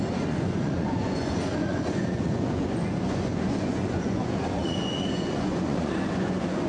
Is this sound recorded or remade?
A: remade